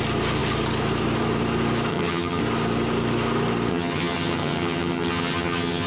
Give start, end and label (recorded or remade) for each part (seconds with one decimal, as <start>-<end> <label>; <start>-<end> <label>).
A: 0.0-1.9 recorded; 1.9-2.4 remade; 2.4-3.7 recorded; 3.7-5.9 remade